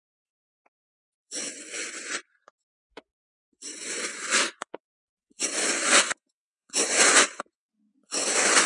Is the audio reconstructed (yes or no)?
yes